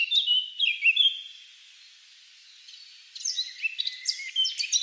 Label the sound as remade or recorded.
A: recorded